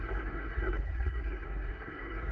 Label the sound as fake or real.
fake